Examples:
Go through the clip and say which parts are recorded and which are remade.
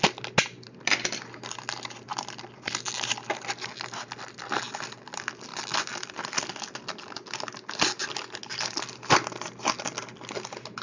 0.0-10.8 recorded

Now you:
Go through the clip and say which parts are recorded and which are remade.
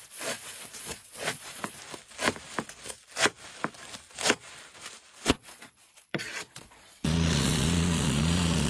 0.0-1.8 remade; 1.8-5.3 recorded; 5.3-8.7 remade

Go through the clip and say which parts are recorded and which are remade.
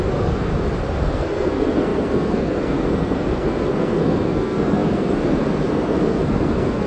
0.0-0.5 remade; 0.5-1.0 recorded; 1.0-6.9 remade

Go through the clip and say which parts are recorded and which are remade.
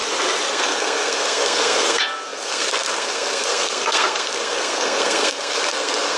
0.0-0.5 recorded; 0.5-6.2 remade